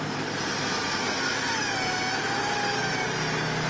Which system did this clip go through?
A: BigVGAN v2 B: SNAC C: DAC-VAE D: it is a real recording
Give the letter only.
D